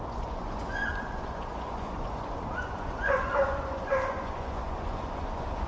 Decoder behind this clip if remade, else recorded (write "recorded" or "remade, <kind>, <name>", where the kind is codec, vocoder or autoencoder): remade, vocoder, Vocos